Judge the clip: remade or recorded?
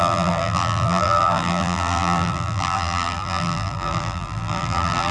remade